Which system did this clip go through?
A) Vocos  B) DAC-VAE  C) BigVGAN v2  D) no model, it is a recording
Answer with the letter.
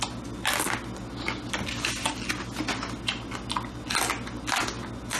D